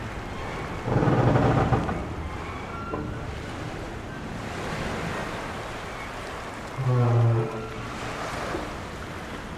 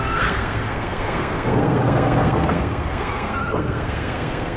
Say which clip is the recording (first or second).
first